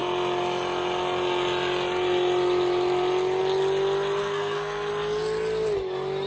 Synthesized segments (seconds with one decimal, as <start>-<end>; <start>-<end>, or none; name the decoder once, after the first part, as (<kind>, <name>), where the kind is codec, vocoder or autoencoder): 4.2-4.9 (codec, SNAC)